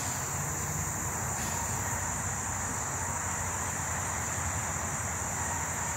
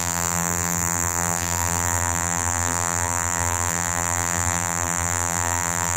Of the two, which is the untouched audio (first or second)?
first